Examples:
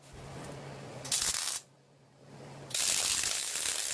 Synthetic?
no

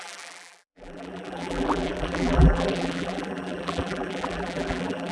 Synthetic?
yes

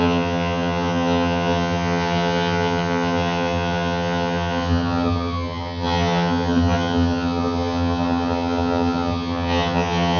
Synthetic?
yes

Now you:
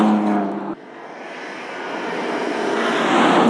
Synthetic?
no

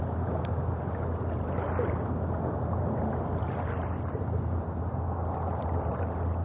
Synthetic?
no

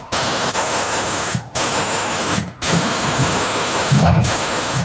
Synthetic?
yes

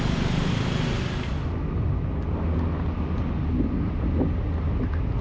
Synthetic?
no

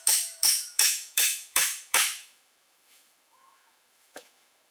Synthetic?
yes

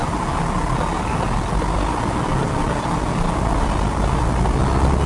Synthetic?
no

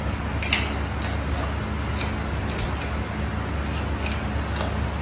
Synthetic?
no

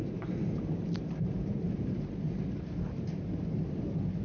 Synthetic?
yes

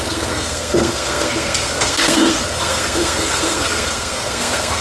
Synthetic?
yes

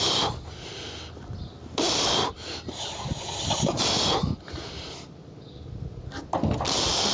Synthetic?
no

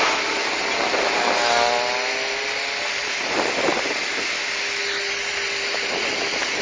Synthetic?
no